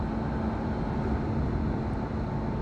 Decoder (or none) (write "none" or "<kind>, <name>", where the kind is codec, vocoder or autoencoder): none